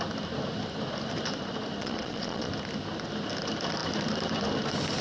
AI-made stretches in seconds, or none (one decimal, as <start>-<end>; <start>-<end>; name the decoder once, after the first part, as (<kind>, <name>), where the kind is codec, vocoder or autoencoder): 1.8-2.5 (vocoder, Vocos)